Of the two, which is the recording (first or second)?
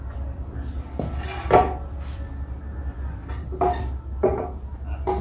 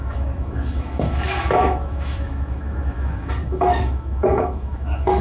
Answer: first